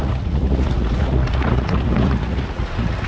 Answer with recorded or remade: remade